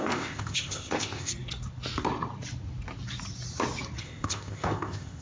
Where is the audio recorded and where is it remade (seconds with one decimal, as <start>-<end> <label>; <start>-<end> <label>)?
0.0-1.3 remade; 1.3-4.0 recorded; 4.0-5.2 remade